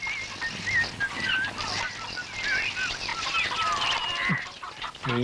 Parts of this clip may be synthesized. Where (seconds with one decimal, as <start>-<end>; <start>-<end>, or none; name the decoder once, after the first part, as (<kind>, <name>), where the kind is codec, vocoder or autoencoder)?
none